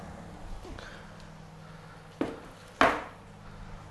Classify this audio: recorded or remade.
recorded